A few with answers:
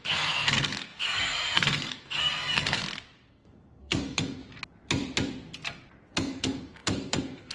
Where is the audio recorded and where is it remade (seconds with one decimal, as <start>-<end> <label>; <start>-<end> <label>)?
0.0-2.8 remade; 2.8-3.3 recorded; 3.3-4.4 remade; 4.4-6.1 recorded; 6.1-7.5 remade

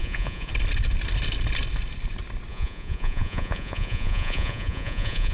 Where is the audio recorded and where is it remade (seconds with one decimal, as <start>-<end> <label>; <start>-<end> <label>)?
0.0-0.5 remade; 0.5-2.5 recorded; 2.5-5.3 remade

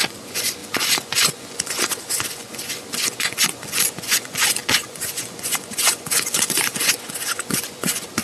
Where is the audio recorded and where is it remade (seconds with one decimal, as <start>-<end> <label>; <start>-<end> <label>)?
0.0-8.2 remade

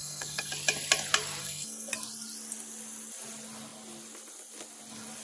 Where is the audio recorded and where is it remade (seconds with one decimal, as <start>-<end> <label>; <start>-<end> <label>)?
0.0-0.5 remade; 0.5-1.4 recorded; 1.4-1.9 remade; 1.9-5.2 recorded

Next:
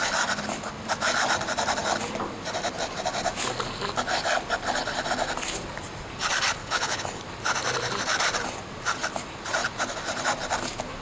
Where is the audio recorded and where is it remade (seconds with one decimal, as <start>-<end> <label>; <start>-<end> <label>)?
0.0-6.6 recorded; 6.6-7.2 remade; 7.2-11.0 recorded

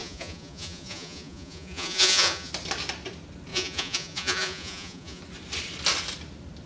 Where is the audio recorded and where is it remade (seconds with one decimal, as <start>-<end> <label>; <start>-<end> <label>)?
0.0-2.5 remade; 2.5-3.5 recorded; 3.5-5.2 remade; 5.2-6.7 recorded

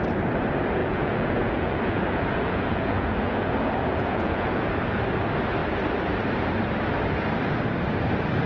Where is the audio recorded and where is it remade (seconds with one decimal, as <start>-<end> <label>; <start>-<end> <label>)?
0.0-0.8 recorded; 0.8-4.7 remade; 4.7-8.5 recorded

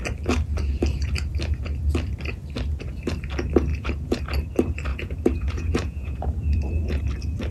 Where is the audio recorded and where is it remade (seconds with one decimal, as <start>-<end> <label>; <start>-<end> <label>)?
0.0-3.7 recorded; 3.7-4.2 remade; 4.2-4.9 recorded; 4.9-7.0 remade; 7.0-7.5 recorded